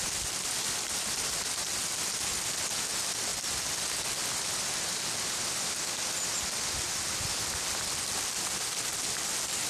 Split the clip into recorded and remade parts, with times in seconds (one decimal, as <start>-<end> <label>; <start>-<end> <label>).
0.0-9.7 recorded